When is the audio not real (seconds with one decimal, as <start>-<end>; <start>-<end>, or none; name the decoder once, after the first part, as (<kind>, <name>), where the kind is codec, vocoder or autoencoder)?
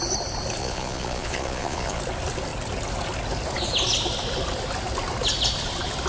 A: 0.6-2.0 (vocoder, Vocos)